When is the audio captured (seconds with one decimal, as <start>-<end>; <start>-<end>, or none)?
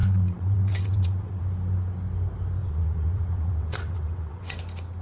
1.4-2.6; 4.6-5.0